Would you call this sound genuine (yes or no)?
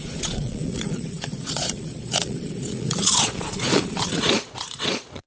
no